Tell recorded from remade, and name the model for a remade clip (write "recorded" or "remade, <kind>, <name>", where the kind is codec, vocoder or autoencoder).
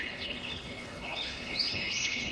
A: remade, codec, HILCodec